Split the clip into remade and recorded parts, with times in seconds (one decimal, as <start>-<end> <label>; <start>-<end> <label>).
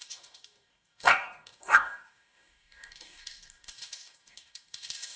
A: 0.0-5.2 remade